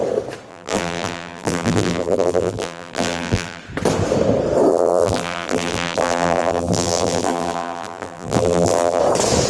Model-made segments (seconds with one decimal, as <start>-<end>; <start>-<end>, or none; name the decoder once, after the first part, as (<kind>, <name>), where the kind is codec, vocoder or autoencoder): 0.5-3.6 (vocoder, BigVGAN v2); 4.7-9.0